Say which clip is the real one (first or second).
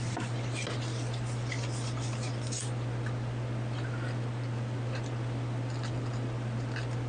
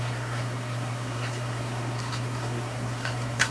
first